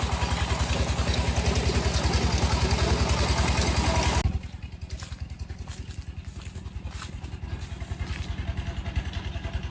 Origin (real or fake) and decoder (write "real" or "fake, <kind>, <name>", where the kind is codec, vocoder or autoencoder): real